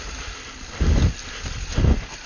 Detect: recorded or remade recorded